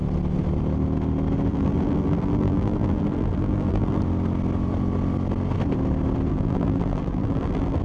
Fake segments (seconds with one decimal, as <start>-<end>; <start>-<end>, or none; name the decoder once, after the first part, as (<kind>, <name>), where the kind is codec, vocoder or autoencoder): 1.5-4.0 (vocoder, BigVGAN v2); 6.3-7.8